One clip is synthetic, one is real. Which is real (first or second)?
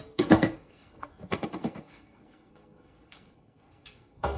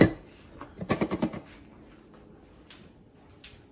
second